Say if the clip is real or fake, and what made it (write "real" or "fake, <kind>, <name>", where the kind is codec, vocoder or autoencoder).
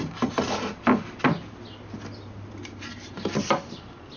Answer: real